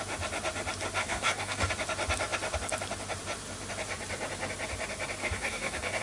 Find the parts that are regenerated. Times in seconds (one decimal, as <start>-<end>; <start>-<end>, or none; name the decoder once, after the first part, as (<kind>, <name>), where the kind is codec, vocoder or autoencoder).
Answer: 1.0-1.7 (codec, DAC); 5.2-6.0